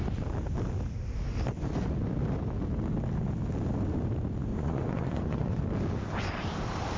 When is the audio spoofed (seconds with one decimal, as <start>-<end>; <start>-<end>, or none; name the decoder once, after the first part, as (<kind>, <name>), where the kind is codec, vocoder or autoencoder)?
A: 4.5-5.6 (vocoder, Vocos)